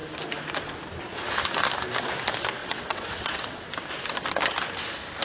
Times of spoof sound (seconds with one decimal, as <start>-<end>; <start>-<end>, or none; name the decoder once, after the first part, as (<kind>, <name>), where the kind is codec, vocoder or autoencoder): 2.6-3.6 (vocoder, WaveNeXt)